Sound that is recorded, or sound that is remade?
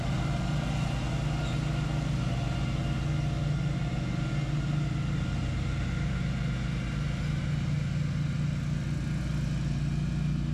recorded